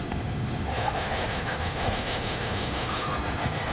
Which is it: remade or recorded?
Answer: remade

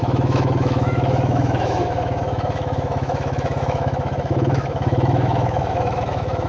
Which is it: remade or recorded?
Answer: remade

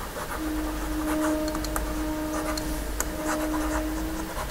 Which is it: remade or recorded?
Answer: recorded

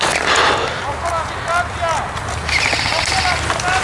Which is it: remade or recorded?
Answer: recorded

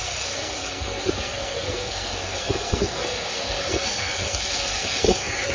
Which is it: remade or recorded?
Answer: remade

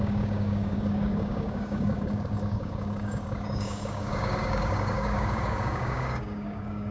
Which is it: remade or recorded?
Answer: remade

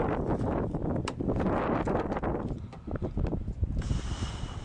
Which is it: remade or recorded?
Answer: recorded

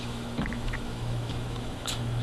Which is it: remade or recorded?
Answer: remade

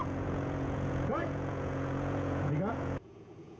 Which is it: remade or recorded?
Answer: remade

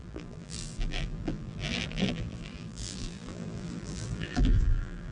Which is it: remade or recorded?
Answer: remade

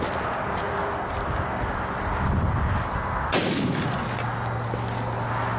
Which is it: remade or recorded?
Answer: recorded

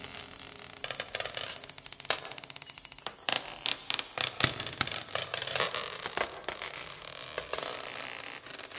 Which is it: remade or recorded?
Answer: remade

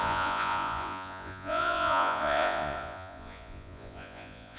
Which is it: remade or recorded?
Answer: remade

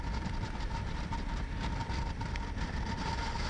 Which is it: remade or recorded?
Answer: remade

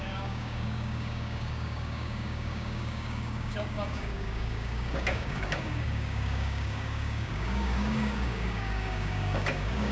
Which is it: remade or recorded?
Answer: remade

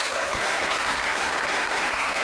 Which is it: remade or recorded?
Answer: remade